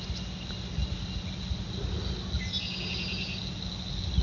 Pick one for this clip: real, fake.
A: real